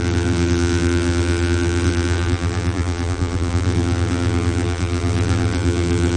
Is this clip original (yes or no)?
no